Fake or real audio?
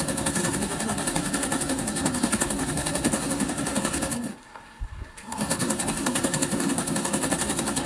fake